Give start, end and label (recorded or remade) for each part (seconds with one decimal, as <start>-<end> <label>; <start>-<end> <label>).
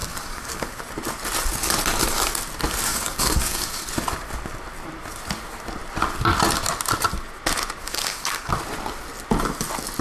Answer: 0.0-0.8 remade; 0.8-2.9 recorded; 2.9-3.9 remade; 3.9-7.8 recorded; 7.8-8.5 remade; 8.5-10.0 recorded